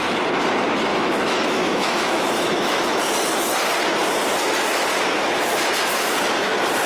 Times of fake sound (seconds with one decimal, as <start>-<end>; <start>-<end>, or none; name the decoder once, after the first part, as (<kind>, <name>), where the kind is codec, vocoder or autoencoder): 0.9-3.0 (autoencoder, DAC-VAE)